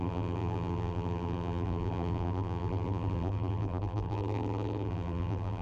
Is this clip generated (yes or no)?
yes